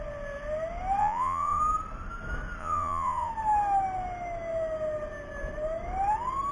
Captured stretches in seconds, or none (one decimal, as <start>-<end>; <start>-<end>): 0.0-1.0; 1.6-2.6; 3.3-6.5